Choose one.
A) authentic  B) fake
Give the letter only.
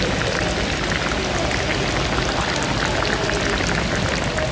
A